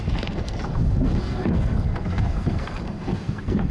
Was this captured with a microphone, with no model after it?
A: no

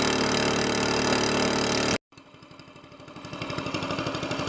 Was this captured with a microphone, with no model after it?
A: yes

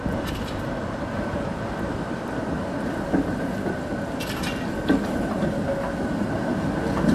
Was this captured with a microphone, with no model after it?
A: yes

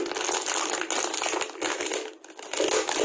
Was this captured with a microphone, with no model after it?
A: yes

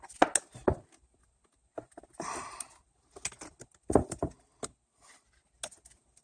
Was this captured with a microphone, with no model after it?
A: yes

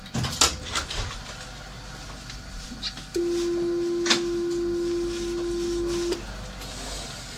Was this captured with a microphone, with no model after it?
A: yes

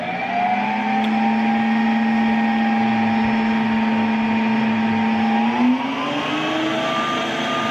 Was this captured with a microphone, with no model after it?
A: yes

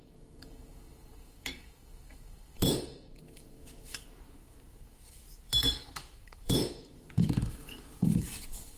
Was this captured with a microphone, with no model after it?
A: no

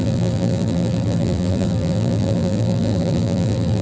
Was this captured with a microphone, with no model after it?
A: no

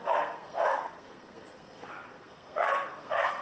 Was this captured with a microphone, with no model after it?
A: no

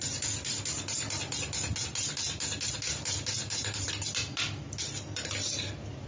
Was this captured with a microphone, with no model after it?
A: yes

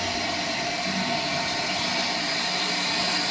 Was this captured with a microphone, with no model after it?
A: yes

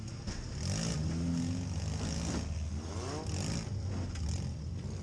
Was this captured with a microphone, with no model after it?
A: yes